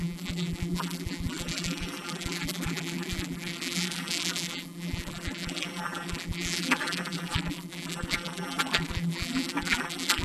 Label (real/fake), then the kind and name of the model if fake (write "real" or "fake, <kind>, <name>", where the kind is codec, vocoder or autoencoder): fake, vocoder, BigVGAN v2